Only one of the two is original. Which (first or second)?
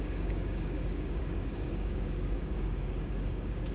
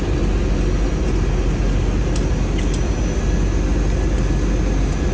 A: second